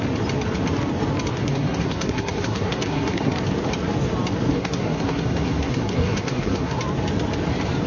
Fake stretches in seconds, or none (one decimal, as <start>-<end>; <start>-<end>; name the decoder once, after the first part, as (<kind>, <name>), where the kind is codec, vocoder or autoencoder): 1.3-3.3 (codec, SNAC); 4.6-6.8